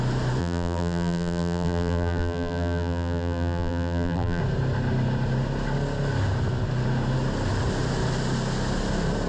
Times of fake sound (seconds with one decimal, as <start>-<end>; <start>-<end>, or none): 0.4-4.4